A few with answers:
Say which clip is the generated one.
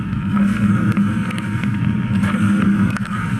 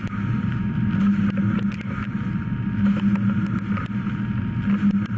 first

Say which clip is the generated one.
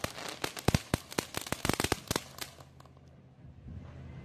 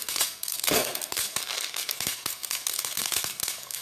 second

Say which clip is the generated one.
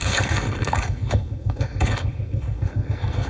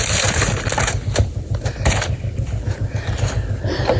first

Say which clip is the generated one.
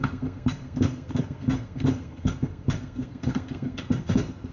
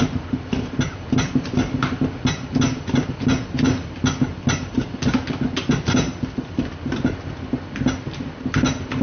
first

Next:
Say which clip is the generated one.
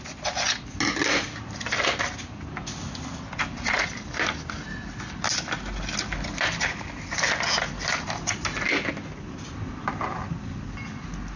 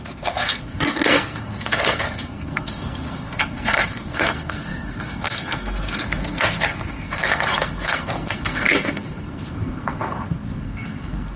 second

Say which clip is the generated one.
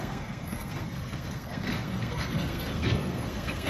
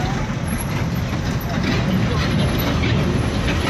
first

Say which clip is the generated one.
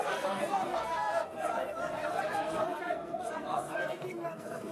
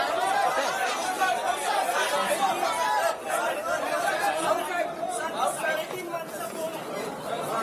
first